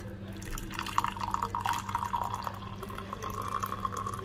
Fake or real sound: real